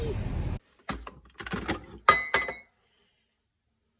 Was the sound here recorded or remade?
recorded